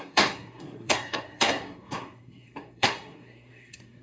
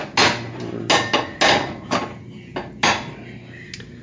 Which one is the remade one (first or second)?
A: first